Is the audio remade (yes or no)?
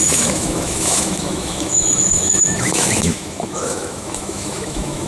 yes